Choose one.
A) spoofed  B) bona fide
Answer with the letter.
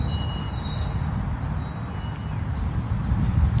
B